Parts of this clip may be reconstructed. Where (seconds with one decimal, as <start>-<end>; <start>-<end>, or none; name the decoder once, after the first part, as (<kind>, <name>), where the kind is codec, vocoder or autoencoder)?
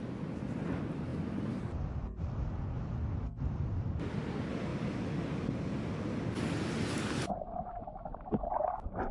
none